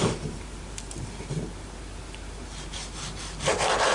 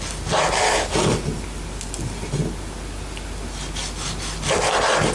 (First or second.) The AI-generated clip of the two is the first